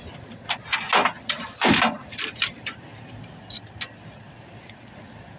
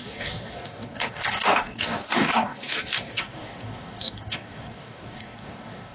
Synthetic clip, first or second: second